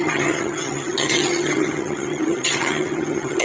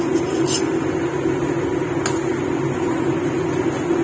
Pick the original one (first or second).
second